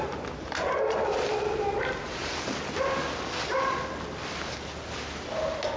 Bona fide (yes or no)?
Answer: yes